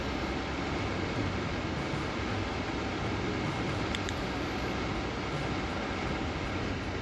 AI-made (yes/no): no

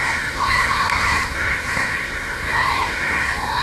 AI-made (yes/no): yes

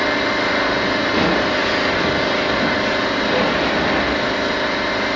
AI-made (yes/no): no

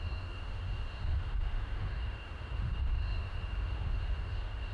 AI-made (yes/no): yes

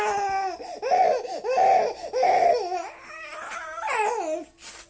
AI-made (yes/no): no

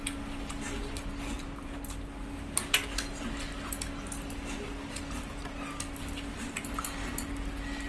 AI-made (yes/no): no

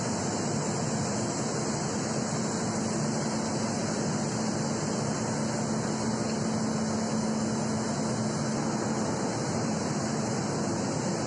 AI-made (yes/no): no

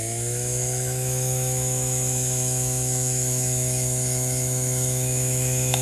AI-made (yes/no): yes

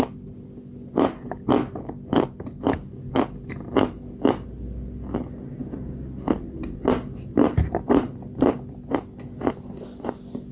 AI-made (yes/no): no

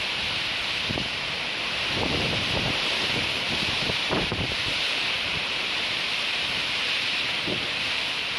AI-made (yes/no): yes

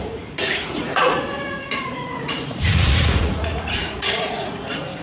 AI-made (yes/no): yes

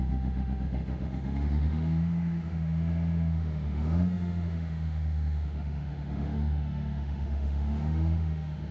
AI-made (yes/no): yes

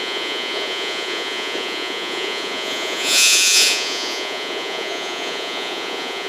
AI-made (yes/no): yes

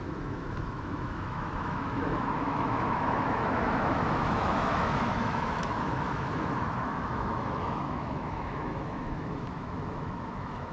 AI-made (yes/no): yes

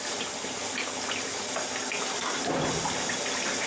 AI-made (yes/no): no